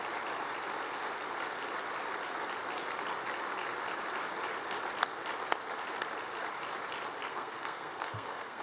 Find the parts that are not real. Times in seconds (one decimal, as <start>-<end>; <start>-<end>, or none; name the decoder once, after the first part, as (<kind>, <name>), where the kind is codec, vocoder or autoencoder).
7.3-8.6 (codec, SNAC)